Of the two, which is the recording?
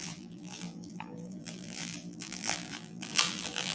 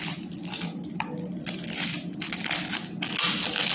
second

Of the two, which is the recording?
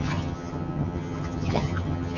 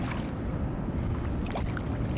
second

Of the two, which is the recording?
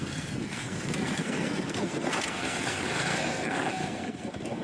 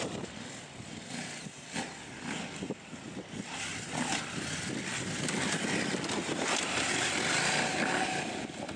second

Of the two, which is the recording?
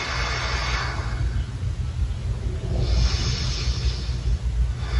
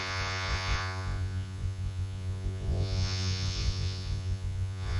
first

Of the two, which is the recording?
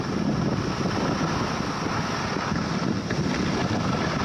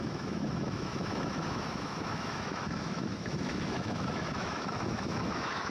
first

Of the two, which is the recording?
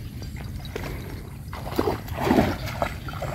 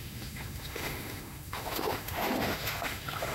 first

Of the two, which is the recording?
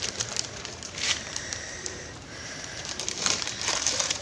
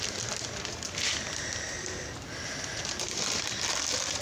second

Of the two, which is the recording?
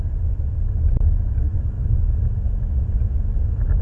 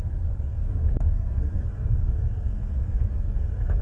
first